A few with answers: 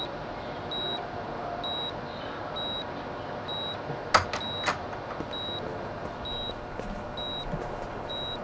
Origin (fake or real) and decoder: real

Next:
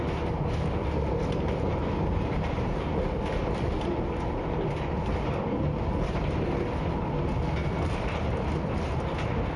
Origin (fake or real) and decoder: real